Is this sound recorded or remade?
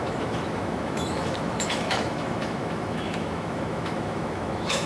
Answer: remade